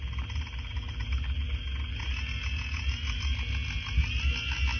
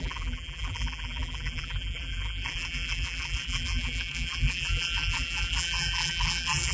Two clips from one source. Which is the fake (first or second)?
second